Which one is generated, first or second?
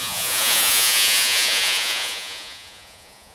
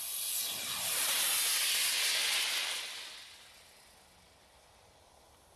first